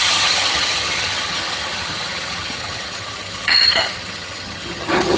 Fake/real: fake